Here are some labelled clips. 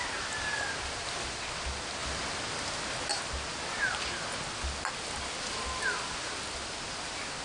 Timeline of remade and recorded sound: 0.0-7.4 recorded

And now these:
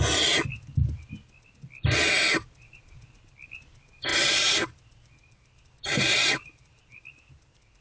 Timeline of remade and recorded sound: 0.0-4.1 recorded; 4.1-7.3 remade; 7.3-7.8 recorded

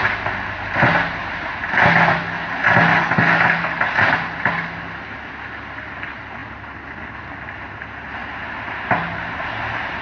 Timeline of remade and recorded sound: 0.0-2.9 recorded; 2.9-3.8 remade; 3.8-10.0 recorded

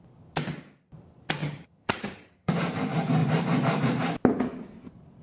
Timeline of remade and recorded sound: 0.0-1.4 recorded; 1.4-2.5 remade; 2.5-5.2 recorded